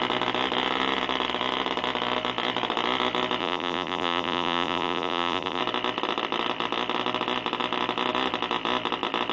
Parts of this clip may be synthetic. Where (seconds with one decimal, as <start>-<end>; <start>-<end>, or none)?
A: 3.4-5.6